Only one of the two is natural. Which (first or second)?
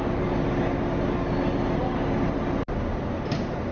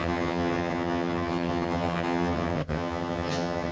first